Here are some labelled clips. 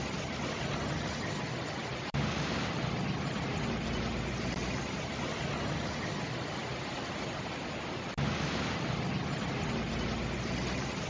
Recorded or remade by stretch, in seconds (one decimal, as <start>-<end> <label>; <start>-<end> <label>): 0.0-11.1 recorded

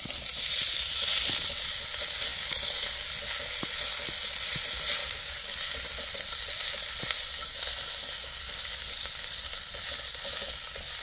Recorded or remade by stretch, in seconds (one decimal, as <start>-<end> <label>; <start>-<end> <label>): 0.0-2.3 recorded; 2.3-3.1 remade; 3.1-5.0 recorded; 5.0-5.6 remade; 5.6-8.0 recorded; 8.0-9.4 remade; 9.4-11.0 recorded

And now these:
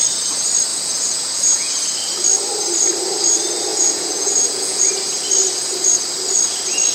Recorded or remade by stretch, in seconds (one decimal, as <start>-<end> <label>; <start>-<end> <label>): 0.0-0.7 recorded; 0.7-1.7 remade; 1.7-3.7 recorded; 3.7-4.8 remade; 4.8-6.9 recorded

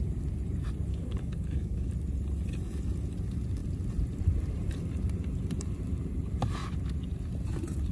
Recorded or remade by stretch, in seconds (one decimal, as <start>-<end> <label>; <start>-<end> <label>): 0.0-0.9 recorded; 0.9-1.9 remade; 1.9-7.9 recorded

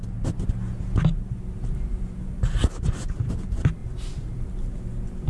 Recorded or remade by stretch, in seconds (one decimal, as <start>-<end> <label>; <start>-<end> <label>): 0.0-3.8 recorded; 3.8-4.5 remade; 4.5-5.3 recorded